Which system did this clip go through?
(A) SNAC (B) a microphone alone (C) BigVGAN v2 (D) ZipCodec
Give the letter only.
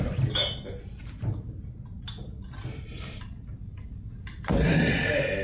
B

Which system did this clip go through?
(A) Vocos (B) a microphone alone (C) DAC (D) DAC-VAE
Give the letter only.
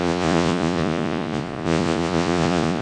A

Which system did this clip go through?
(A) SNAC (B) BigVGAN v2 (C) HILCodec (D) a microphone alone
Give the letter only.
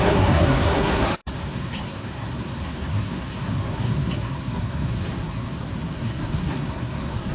A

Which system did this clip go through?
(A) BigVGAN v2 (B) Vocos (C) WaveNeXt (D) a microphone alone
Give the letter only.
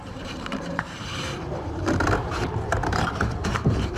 A